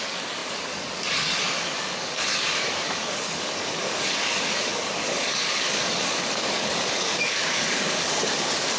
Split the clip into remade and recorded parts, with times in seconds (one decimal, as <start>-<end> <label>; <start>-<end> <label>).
0.0-8.8 remade